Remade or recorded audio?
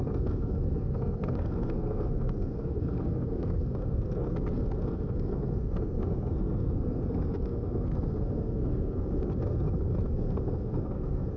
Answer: remade